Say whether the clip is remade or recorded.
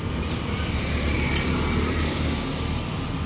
recorded